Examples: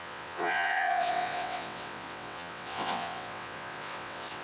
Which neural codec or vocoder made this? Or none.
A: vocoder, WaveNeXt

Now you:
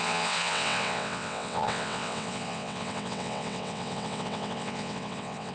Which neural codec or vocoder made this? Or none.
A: vocoder, WaveNeXt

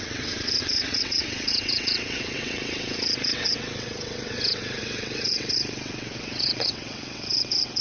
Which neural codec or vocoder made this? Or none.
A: vocoder, WaveNeXt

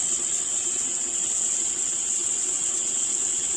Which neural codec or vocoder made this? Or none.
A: vocoder, WaveNeXt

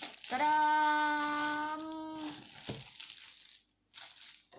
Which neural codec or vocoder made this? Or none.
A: none